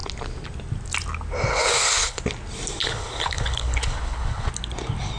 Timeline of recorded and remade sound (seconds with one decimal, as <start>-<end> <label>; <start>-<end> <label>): 0.0-1.5 recorded; 1.5-2.2 remade; 2.2-2.8 recorded; 2.8-4.5 remade; 4.5-5.2 recorded